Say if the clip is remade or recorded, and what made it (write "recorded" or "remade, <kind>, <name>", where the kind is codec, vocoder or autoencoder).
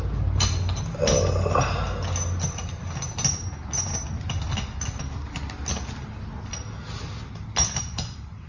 recorded